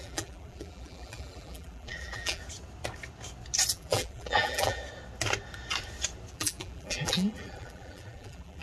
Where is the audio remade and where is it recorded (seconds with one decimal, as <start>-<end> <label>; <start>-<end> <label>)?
0.0-2.4 remade; 2.4-3.7 recorded; 3.7-4.8 remade; 4.8-6.3 recorded; 6.3-8.6 remade